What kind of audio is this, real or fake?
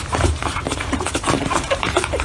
fake